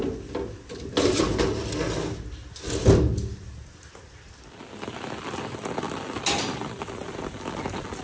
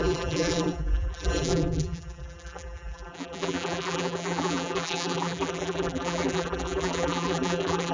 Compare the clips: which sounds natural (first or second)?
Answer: first